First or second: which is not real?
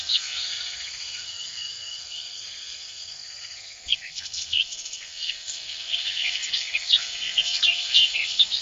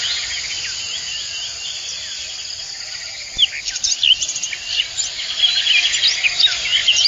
first